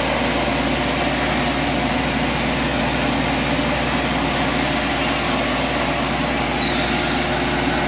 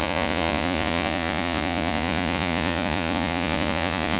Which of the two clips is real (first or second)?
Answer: first